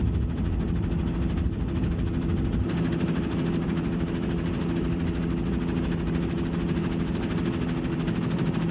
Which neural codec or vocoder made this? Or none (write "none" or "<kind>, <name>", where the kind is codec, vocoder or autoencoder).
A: none